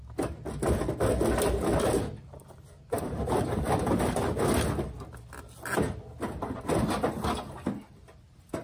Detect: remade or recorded recorded